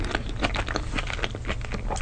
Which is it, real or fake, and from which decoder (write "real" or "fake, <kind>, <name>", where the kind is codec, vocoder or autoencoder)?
real